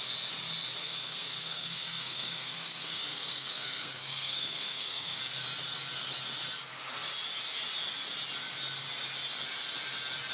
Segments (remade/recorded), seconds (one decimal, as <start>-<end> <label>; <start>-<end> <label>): 0.0-0.8 recorded; 0.8-5.2 remade; 5.2-10.3 recorded